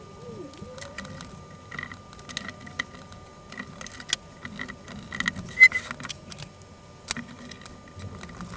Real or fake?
real